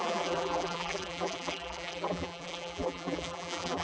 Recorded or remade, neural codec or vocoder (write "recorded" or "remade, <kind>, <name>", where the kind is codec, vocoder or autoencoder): remade, vocoder, BigVGAN v2